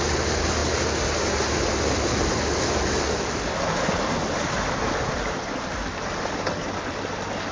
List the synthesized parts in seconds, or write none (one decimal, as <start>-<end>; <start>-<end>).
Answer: none